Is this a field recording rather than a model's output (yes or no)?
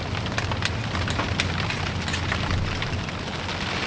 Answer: yes